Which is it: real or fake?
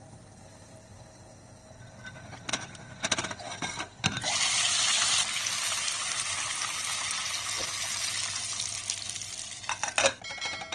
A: real